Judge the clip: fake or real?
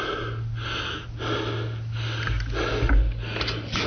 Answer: real